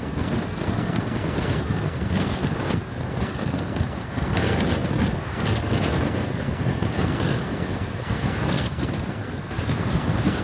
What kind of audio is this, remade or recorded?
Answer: remade